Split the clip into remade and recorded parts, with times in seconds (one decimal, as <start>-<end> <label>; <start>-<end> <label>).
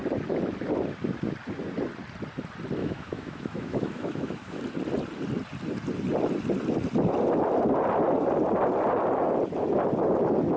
0.0-2.8 recorded; 2.8-4.6 remade; 4.6-10.6 recorded